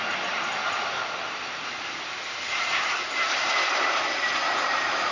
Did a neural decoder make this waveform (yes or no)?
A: yes